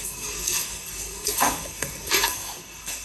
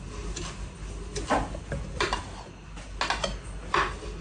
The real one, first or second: second